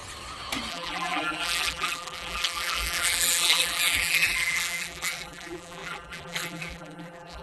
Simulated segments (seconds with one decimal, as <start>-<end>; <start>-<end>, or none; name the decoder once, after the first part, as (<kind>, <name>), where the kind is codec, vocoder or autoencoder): 0.7-7.4 (vocoder, BigVGAN v2)